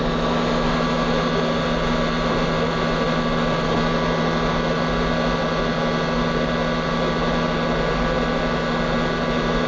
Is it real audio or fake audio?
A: real